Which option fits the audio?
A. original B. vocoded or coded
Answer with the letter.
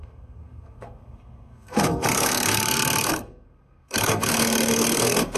B